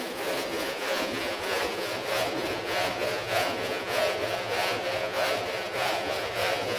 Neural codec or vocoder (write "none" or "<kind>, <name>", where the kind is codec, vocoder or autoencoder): vocoder, Vocos